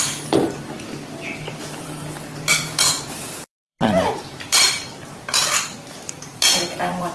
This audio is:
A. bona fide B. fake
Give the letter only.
B